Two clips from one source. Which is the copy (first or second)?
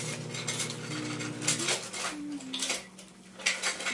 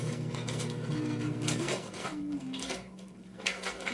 second